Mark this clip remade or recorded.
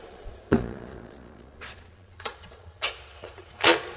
remade